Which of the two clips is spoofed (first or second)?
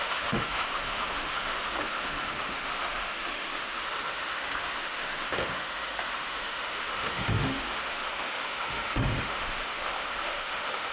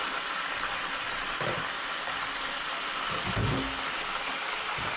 first